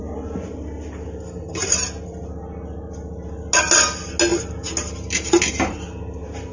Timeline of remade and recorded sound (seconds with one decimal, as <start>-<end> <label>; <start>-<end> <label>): 0.0-6.5 recorded